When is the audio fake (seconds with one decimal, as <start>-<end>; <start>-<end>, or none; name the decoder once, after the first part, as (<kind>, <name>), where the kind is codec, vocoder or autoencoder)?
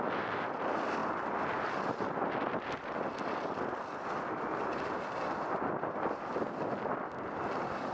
none